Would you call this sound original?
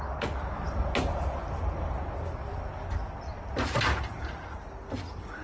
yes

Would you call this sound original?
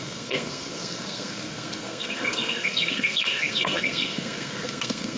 no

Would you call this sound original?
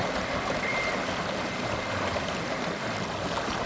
yes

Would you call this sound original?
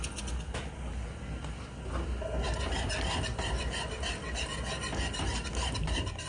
yes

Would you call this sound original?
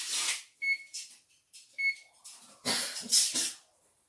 yes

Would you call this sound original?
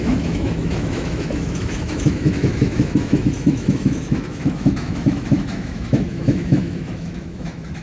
no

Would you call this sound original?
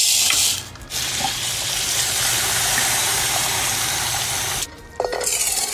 yes